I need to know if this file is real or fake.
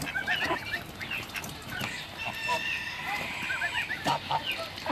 real